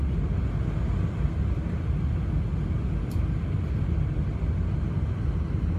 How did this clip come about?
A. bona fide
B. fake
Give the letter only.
A